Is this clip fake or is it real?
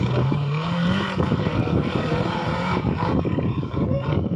fake